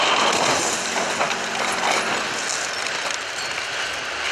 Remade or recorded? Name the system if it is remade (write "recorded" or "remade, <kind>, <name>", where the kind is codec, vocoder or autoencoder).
recorded